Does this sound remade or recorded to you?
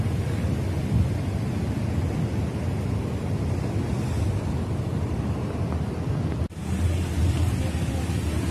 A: recorded